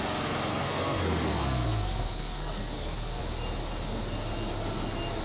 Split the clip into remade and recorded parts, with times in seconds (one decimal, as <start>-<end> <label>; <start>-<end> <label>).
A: 0.0-0.5 recorded; 0.5-3.2 remade; 3.2-5.2 recorded